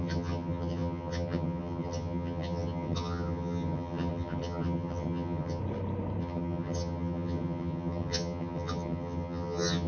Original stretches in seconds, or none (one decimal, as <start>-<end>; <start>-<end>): 5.6-6.2